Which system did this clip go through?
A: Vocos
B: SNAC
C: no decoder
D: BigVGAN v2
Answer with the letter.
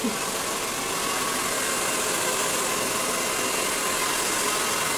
C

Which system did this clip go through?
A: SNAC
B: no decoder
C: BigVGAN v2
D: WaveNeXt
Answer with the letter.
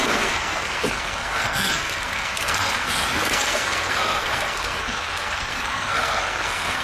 A